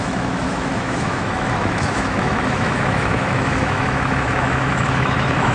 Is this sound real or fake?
fake